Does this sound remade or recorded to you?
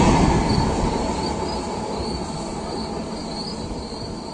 recorded